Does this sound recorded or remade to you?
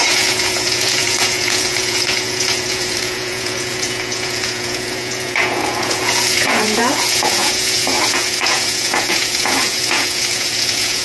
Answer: remade